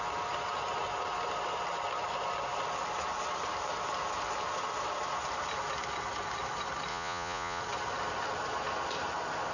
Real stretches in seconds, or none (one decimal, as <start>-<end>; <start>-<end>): 0.0-6.9; 7.6-9.5